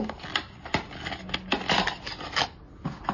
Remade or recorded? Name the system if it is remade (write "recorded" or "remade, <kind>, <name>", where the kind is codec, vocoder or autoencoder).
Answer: recorded